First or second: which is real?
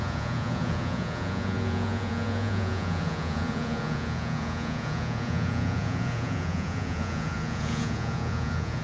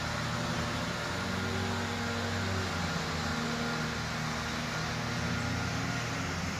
second